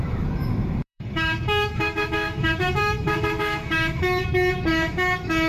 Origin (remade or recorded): remade